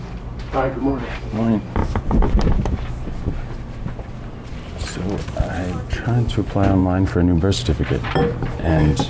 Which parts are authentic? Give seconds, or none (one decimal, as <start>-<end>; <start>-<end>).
0.0-1.8; 2.9-6.8; 8.7-9.1